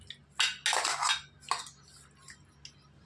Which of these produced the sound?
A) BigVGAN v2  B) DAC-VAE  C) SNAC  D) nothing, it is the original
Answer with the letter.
D